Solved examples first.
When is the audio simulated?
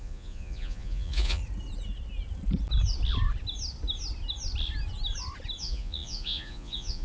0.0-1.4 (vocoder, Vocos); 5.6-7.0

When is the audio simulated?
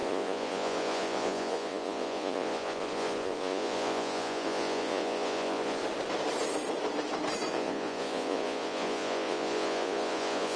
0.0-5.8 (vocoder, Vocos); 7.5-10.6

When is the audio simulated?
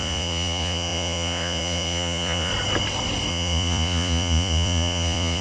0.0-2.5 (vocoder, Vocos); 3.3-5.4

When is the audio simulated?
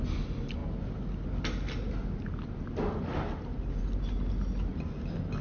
none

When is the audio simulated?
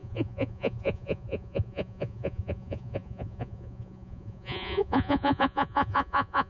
0.0-6.5 (vocoder, Vocos)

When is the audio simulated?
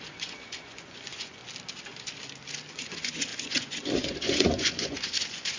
0.0-1.4 (vocoder, Vocos); 2.7-5.6